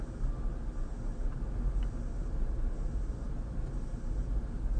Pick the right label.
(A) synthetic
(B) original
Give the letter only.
B